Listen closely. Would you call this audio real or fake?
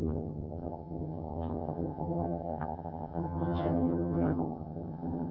fake